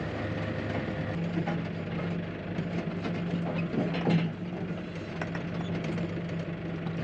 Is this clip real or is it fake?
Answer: real